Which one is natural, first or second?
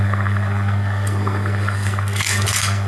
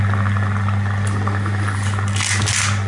second